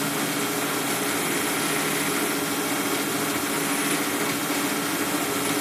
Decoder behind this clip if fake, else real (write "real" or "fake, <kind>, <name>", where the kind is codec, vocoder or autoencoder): real